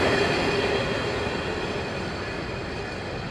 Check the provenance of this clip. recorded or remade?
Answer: recorded